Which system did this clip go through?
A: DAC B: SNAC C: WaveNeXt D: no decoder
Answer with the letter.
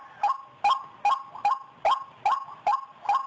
D